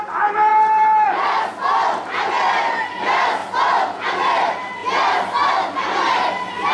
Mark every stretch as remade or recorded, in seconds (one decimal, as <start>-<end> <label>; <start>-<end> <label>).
0.0-6.7 recorded